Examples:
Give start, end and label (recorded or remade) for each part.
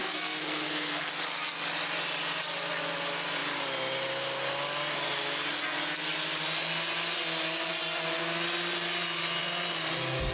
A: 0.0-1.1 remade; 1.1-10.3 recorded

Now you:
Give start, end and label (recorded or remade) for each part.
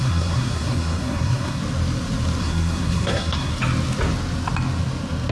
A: 0.0-1.6 remade; 1.6-2.4 recorded; 2.4-3.5 remade; 3.5-5.3 recorded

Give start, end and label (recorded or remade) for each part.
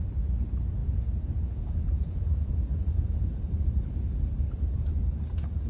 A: 0.0-0.8 recorded; 0.8-3.3 remade; 3.3-5.7 recorded